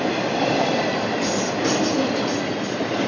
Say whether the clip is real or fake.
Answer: real